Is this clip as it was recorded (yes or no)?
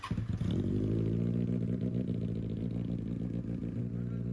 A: yes